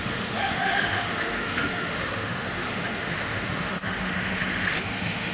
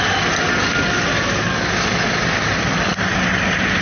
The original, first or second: second